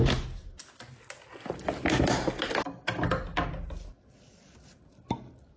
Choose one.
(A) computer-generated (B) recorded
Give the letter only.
B